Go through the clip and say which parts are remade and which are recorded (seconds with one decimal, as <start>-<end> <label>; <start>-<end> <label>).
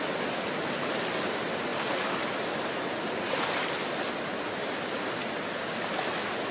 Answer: 0.0-6.5 recorded